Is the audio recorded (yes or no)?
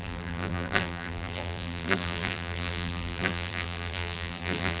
no